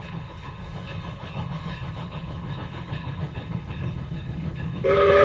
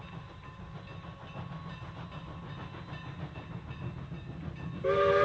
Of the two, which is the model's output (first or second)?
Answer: first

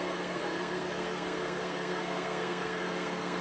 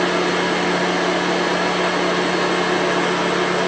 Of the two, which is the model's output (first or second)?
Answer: first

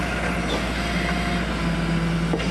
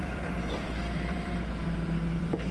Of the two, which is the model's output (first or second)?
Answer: second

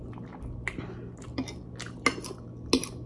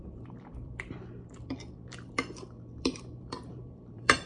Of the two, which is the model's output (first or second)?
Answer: second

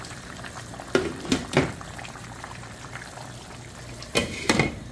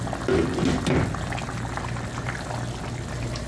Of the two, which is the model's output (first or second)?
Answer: first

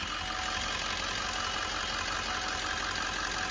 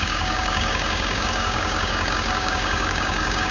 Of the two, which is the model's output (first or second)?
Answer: second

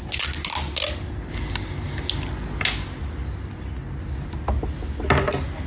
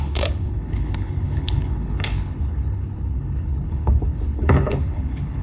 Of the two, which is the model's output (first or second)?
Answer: second